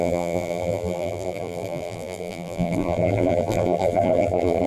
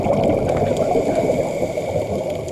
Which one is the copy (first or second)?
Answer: first